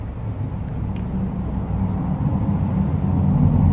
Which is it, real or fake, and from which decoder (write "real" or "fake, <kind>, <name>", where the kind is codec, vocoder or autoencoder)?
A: real